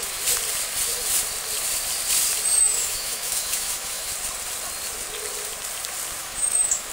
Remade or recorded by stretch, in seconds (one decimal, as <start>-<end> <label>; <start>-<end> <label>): 0.0-2.6 recorded; 2.6-4.1 remade; 4.1-6.2 recorded; 6.2-6.9 remade